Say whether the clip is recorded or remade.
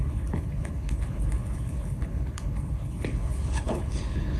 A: remade